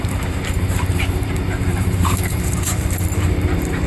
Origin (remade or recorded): remade